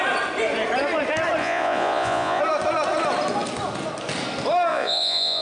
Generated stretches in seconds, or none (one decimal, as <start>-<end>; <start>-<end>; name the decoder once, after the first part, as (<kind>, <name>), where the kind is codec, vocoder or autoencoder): 1.4-2.4 (vocoder, Vocos); 4.7-5.4